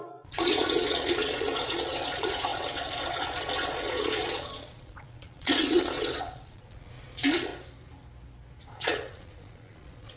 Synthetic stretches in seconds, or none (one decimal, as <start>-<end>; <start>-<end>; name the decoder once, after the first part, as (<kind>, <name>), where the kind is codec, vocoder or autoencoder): 0.0-7.5 (vocoder, Vocos); 8.6-10.2